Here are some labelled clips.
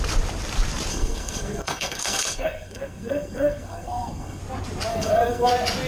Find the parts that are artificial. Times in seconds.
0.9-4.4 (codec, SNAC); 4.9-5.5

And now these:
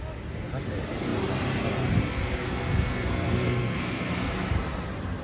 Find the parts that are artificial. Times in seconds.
2.1-4.3 (codec, SNAC)

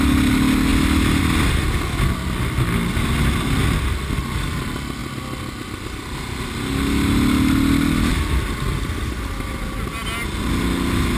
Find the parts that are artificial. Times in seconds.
none

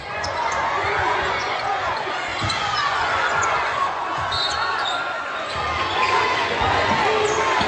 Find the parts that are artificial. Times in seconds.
0.0-7.0 (vocoder, Vocos)

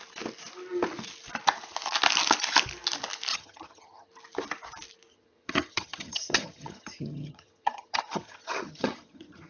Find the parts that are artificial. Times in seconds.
3.3-4.1 (vocoder, HiFi-GAN); 5.1-9.5

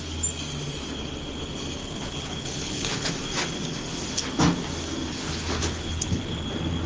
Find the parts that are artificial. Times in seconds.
1.8-3.1 (codec, HILCodec); 5.1-6.5

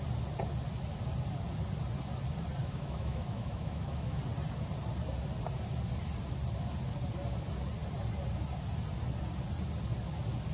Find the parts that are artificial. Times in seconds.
2.6-4.2 (autoencoder, DAC-VAE)

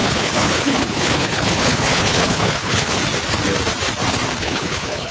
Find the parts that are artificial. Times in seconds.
0.0-3.0 (codec, HILCodec); 4.4-5.1